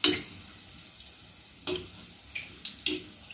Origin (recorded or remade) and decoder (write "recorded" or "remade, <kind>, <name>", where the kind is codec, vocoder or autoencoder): recorded